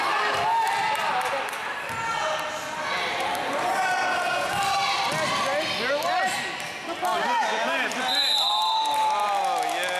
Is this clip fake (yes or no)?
no